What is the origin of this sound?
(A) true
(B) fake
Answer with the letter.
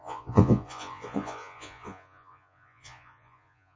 B